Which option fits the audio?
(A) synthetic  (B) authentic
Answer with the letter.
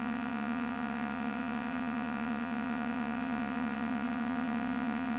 A